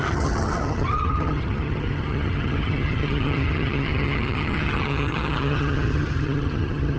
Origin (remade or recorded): remade